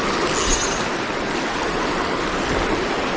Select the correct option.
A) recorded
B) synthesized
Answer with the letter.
A